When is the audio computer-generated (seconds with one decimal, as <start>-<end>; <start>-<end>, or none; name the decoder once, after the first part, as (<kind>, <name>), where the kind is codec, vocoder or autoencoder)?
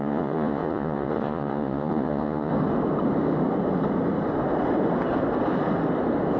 0.0-2.5 (vocoder, Vocos)